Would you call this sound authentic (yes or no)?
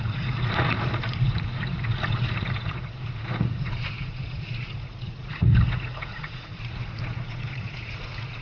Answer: no